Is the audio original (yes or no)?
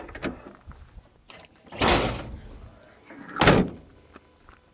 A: yes